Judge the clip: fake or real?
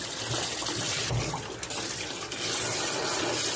real